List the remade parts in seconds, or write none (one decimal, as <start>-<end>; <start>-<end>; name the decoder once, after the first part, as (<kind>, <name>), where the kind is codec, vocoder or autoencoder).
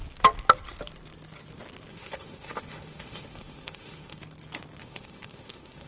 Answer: 1.9-4.2 (autoencoder, DAC-VAE); 4.8-5.9